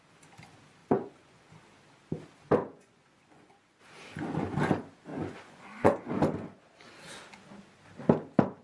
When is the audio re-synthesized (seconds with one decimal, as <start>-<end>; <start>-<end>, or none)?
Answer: 0.8-1.5; 2.6-3.8; 5.1-6.1